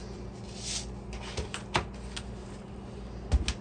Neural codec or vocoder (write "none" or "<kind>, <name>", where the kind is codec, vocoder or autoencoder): none